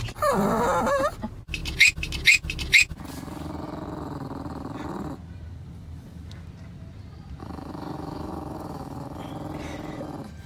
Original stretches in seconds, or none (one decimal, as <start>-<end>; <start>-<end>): 0.0-7.4; 9.3-10.5